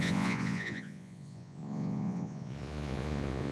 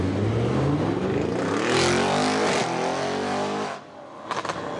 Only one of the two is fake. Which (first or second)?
first